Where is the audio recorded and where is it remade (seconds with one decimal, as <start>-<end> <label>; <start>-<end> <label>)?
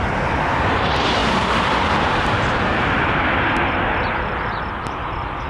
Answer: 0.0-5.5 recorded